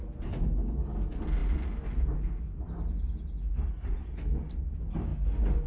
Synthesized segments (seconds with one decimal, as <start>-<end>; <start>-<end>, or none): none